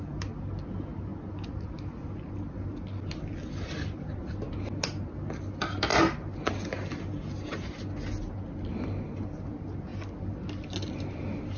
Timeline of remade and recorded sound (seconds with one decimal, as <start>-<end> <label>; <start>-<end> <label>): 0.0-8.7 recorded; 8.7-9.5 remade; 9.5-11.6 recorded